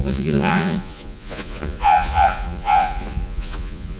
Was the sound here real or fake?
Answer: fake